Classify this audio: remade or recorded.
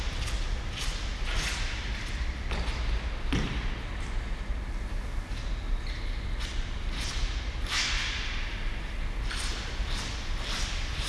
recorded